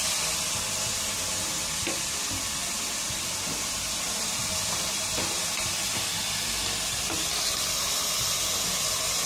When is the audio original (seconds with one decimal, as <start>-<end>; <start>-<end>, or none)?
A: 0.0-9.3